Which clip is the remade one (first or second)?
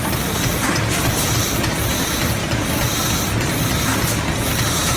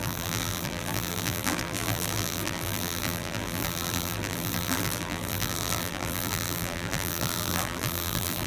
second